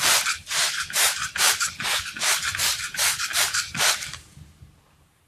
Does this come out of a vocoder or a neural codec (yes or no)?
yes